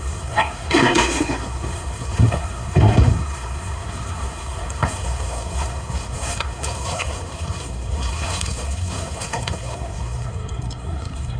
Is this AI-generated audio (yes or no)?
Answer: yes